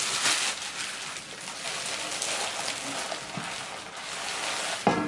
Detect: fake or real real